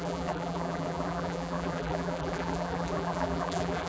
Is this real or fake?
fake